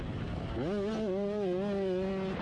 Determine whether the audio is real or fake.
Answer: real